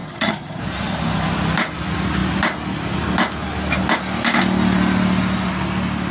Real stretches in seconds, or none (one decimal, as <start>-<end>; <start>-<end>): 0.6-6.1